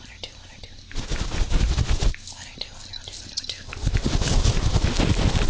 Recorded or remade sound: recorded